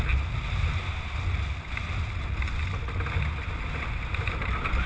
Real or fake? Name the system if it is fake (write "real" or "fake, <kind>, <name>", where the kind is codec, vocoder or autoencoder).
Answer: real